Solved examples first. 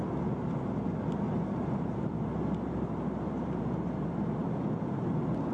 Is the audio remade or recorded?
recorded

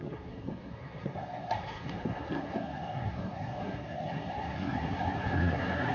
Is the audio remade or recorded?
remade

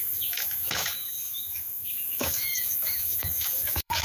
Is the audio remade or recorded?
remade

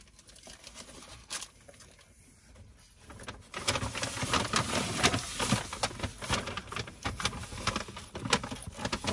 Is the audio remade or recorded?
recorded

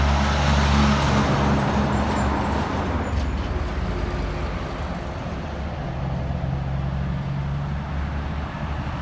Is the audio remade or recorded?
recorded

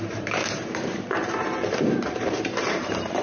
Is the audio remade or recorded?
remade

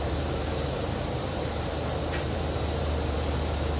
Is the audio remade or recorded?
remade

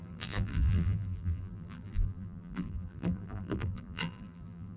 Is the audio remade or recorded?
remade